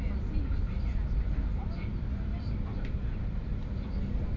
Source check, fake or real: real